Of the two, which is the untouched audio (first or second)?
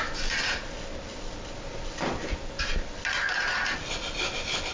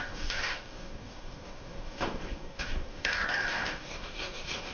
first